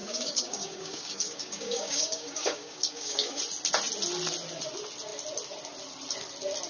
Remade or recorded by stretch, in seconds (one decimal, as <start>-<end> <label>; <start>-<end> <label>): 0.0-3.4 remade; 3.4-6.7 recorded